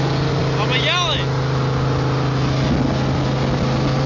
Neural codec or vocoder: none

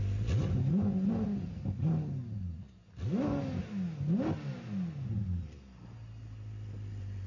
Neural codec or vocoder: none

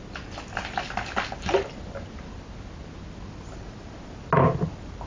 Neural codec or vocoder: none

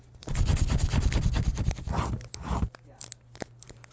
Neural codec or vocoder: none